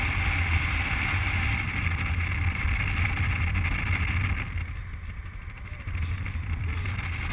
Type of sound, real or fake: real